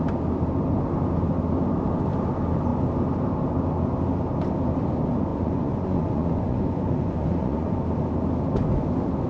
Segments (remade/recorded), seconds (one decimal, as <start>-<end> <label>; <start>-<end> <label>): 0.0-5.3 recorded; 5.3-7.8 remade; 7.8-9.3 recorded